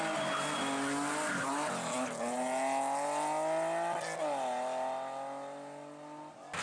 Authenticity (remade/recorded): recorded